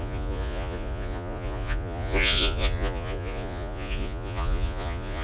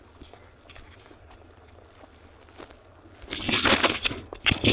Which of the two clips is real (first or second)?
second